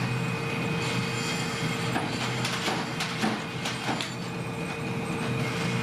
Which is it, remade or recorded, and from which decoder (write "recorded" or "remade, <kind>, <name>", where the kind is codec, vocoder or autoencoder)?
recorded